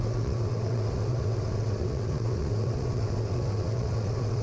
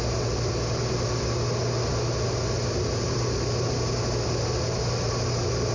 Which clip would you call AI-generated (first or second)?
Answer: first